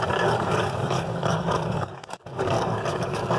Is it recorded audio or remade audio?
remade